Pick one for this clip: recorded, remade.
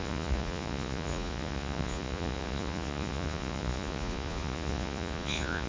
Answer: remade